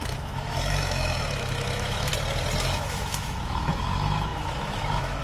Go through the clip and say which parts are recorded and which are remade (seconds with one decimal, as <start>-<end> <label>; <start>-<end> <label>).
0.0-2.1 remade; 2.1-2.6 recorded; 2.6-5.2 remade